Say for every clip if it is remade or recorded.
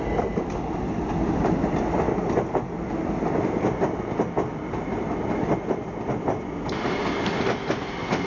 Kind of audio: recorded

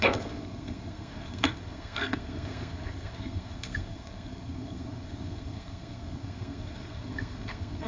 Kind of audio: remade